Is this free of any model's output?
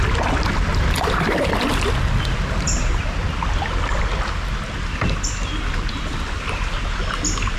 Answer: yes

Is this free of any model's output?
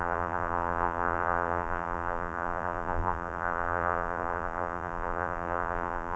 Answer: no